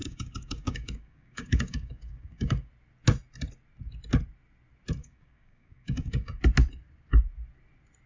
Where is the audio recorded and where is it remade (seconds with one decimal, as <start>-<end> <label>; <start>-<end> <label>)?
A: 0.0-2.7 remade; 2.7-5.0 recorded; 5.0-6.4 remade; 6.4-8.1 recorded